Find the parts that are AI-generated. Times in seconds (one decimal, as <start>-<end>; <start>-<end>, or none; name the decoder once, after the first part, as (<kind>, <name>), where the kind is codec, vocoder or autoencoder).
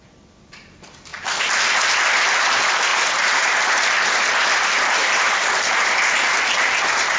2.9-3.5 (vocoder, BigVGAN v2); 5.0-5.5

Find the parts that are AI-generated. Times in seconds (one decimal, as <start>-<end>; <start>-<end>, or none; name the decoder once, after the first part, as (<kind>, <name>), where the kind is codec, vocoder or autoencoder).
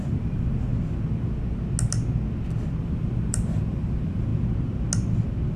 0.0-0.7 (vocoder, BigVGAN v2); 2.8-4.3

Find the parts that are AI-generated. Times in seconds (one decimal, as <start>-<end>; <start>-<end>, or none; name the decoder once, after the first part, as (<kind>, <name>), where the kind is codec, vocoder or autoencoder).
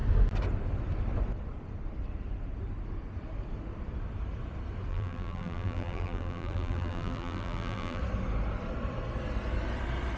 4.9-8.0 (vocoder, BigVGAN v2)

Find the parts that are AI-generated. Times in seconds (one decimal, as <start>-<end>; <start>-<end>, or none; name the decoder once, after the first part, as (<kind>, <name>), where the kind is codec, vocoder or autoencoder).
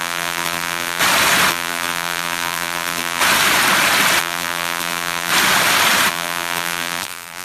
0.0-1.0 (vocoder, BigVGAN v2); 1.5-3.2; 4.2-5.3; 6.1-7.4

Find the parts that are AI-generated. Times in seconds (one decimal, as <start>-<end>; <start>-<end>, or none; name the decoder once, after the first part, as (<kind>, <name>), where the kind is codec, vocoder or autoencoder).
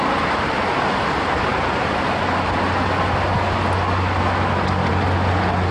none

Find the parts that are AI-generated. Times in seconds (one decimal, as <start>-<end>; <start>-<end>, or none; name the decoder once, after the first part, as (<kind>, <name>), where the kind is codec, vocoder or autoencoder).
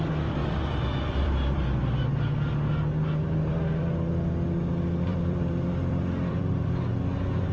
0.4-2.0 (vocoder, BigVGAN v2); 3.2-3.8; 5.1-6.5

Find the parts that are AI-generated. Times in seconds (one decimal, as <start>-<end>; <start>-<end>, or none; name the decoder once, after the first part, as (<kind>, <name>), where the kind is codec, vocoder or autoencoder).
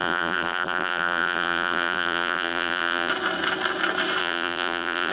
0.0-3.1 (vocoder, BigVGAN v2); 4.2-5.1